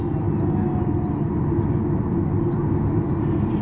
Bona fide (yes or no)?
yes